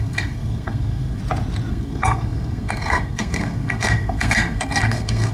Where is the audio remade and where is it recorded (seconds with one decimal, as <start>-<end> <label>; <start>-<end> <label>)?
0.0-1.2 remade; 1.2-1.7 recorded; 1.7-5.3 remade